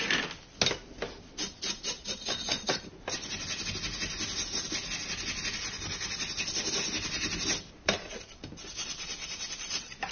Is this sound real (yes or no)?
yes